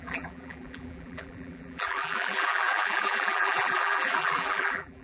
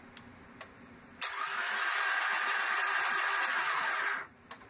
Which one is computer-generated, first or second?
first